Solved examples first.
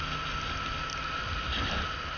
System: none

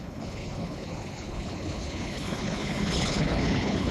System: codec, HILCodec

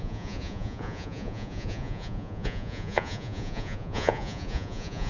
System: vocoder, Vocos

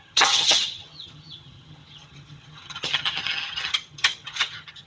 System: vocoder, HiFi-GAN